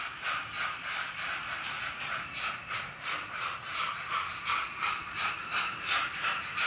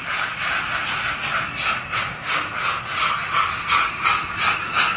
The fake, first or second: first